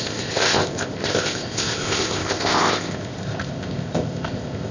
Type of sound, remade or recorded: remade